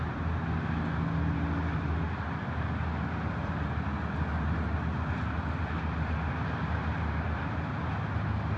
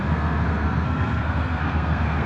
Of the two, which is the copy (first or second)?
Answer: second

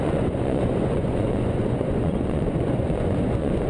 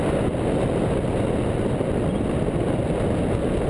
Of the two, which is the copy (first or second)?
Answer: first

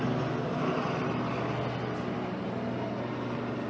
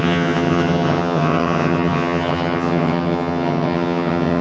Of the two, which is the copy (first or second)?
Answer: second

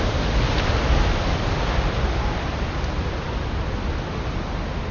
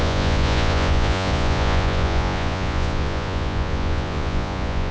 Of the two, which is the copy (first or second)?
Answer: second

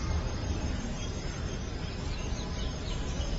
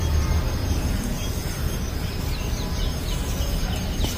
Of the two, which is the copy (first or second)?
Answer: first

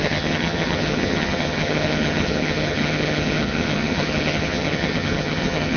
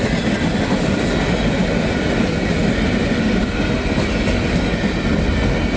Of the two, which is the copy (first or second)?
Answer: first